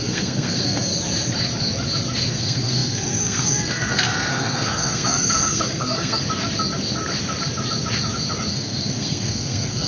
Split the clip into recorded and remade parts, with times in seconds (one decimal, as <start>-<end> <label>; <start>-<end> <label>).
0.0-0.9 remade; 0.9-2.3 recorded; 2.3-6.2 remade; 6.2-8.5 recorded; 8.5-9.9 remade